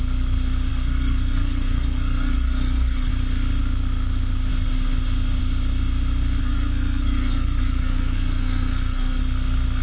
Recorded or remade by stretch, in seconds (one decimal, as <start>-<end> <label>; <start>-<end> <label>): 0.0-0.7 recorded; 0.7-3.1 remade; 3.1-6.4 recorded; 6.4-9.2 remade; 9.2-9.8 recorded